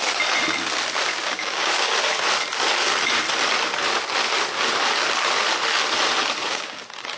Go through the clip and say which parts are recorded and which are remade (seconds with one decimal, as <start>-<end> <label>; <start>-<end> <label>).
0.0-1.1 recorded; 1.1-1.9 remade; 1.9-6.5 recorded; 6.5-7.2 remade